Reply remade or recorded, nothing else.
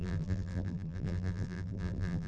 remade